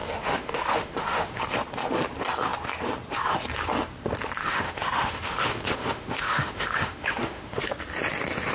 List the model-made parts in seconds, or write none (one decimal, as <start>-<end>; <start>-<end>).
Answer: 0.0-1.4; 4.4-7.7

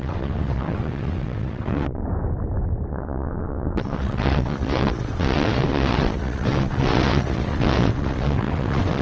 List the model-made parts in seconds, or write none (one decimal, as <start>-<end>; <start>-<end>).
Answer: 0.0-2.0; 2.9-9.0

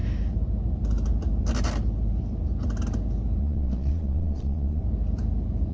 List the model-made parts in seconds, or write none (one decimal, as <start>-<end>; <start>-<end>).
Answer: 3.4-4.8

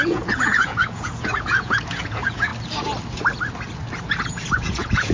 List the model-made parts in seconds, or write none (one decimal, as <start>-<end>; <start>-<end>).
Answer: 0.0-2.5; 4.2-5.1

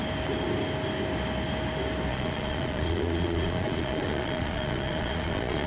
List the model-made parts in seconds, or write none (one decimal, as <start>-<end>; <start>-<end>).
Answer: 2.1-5.7